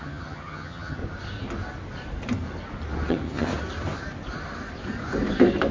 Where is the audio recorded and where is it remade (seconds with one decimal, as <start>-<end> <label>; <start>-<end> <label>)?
0.0-1.0 remade; 1.0-3.1 recorded; 3.1-3.5 remade; 3.5-5.7 recorded